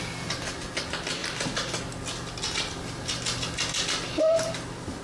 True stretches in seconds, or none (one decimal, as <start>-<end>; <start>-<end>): 0.0-5.0